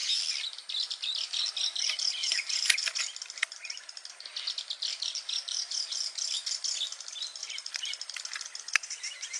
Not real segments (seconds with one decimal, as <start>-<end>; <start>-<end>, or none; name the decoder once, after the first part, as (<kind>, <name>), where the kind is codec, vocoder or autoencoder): 2.2-3.0 (vocoder, BigVGAN v2); 4.9-5.9; 7.4-9.4